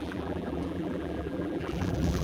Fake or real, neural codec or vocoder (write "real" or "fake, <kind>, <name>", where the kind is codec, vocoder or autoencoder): fake, vocoder, BigVGAN v2